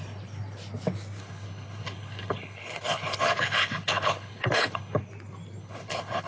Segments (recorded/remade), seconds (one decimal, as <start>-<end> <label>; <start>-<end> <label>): 0.0-1.2 recorded; 1.2-5.0 remade; 5.0-5.6 recorded; 5.6-6.3 remade